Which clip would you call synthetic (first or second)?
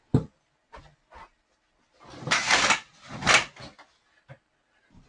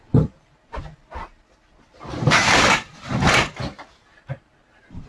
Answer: second